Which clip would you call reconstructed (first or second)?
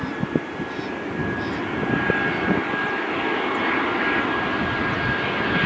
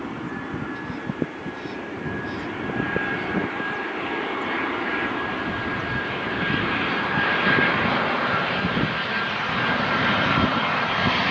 second